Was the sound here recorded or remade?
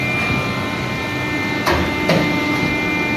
recorded